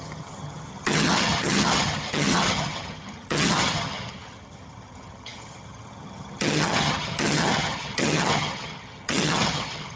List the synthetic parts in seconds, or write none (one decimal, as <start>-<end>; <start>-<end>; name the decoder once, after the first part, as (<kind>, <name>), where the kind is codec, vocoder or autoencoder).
0.0-10.0 (vocoder, HiFi-GAN)